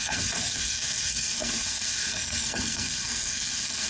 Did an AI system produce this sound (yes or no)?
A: yes